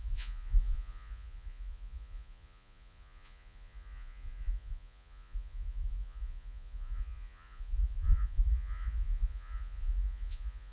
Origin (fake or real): fake